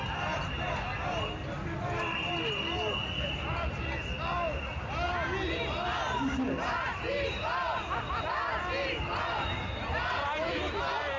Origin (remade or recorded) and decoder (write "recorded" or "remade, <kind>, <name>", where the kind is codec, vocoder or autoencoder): recorded